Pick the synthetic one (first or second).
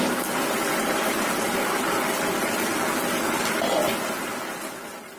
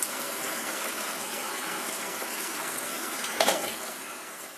second